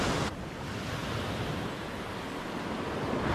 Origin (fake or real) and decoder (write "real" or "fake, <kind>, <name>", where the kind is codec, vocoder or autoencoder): real